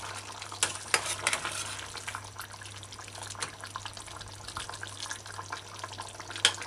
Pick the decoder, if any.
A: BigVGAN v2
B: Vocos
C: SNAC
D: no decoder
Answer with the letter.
D